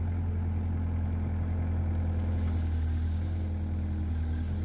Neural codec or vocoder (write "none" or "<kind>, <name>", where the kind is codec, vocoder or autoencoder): none